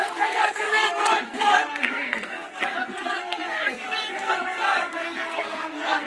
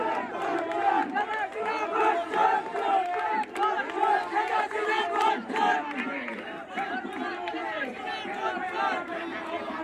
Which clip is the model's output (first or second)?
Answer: first